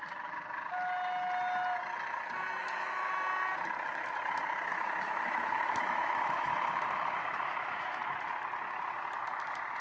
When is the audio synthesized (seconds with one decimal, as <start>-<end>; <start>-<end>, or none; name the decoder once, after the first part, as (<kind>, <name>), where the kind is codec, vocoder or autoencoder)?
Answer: 2.6-3.1 (autoencoder, DAC-VAE); 4.7-8.0

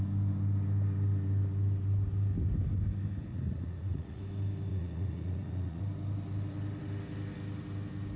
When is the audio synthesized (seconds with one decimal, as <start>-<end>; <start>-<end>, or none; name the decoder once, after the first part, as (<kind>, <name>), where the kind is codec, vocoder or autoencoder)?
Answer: 3.3-4.2 (vocoder, Vocos); 4.7-5.8

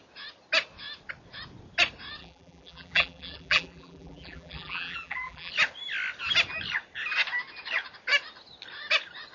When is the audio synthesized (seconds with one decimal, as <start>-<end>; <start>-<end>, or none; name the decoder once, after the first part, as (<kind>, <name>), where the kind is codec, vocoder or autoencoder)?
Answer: 2.2-5.5 (vocoder, BigVGAN v2)

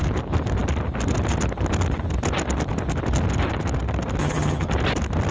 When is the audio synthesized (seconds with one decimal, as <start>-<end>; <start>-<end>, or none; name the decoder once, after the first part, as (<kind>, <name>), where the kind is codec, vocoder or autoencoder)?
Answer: 4.2-4.7 (vocoder, HiFi-GAN)